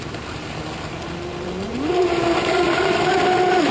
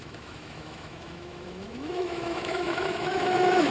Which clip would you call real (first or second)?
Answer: first